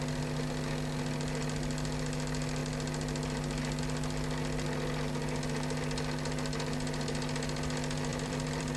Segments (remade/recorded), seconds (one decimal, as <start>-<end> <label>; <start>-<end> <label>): 0.0-8.1 recorded; 8.1-8.8 remade